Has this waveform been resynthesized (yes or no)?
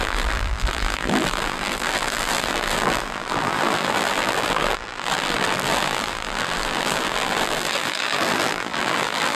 yes